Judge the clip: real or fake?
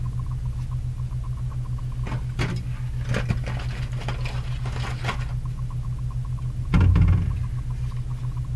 real